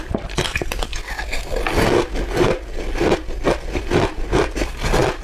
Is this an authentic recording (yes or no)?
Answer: yes